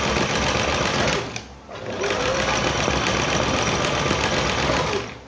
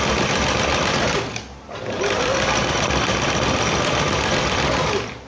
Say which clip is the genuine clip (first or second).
first